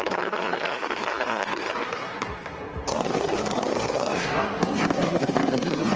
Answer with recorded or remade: remade